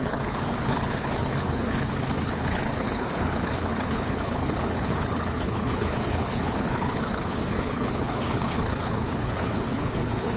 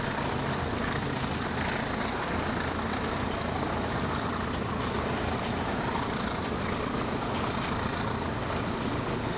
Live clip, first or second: second